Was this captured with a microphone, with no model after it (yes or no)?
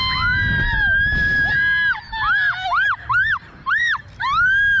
yes